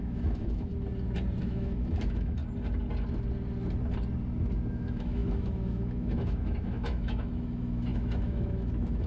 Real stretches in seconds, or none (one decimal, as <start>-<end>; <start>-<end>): 0.7-1.4; 2.4-4.7